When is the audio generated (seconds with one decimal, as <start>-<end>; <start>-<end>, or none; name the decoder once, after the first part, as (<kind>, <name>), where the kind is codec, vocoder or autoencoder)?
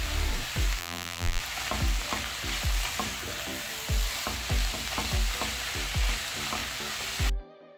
0.8-1.4 (vocoder, BigVGAN v2)